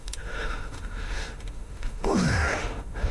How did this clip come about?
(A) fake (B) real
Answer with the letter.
A